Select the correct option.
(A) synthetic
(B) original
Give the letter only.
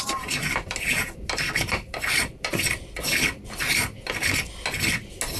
B